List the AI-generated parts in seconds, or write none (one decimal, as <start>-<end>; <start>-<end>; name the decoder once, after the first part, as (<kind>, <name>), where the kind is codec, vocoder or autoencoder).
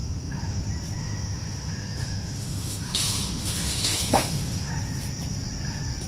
0.0-0.6 (autoencoder, DAC-VAE); 1.0-4.7